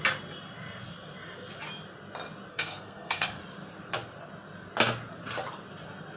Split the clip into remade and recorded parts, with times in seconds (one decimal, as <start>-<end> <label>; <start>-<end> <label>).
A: 0.0-2.5 recorded; 2.5-3.4 remade; 3.4-6.2 recorded